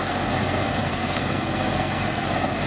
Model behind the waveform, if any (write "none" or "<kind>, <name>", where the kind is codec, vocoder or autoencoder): codec, SNAC